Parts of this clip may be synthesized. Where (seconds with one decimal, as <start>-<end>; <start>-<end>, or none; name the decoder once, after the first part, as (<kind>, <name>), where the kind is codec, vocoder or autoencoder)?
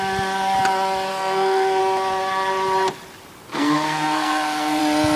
1.1-1.8 (codec, SNAC); 3.5-4.8